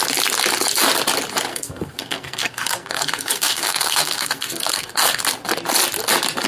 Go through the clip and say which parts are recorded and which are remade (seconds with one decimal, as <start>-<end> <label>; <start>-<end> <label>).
0.0-1.5 recorded; 1.5-5.2 remade; 5.2-6.5 recorded